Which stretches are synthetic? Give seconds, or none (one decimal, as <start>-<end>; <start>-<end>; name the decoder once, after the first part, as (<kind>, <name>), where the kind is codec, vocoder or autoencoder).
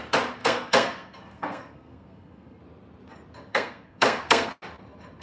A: 0.4-2.6 (codec, SNAC); 3.5-4.5